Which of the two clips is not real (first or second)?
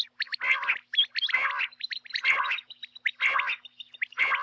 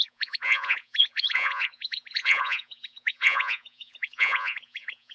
second